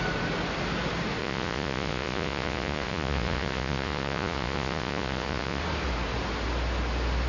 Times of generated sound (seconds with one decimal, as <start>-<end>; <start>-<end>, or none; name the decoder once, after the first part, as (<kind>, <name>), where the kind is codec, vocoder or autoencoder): 1.2-5.6 (vocoder, Vocos)